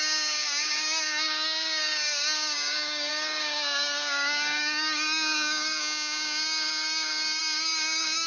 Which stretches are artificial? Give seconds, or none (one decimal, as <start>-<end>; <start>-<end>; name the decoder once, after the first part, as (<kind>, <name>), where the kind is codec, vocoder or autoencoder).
0.0-8.3 (codec, DAC)